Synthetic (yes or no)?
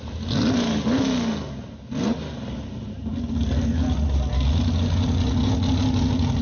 no